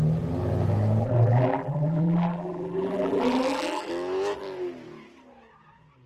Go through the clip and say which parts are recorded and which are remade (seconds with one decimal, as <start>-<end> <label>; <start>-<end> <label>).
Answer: 0.0-1.0 recorded; 1.0-3.9 remade; 3.9-6.1 recorded